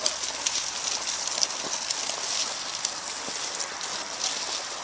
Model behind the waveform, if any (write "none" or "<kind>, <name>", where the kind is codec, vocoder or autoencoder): none